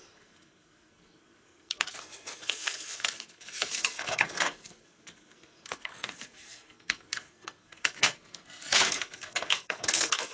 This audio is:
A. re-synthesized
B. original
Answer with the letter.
A